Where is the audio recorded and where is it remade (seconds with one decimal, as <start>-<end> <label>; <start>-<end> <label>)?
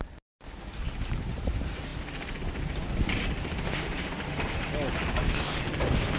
0.0-6.2 recorded